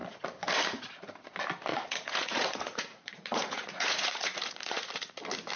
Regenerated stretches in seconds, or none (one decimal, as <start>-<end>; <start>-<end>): 1.7-5.1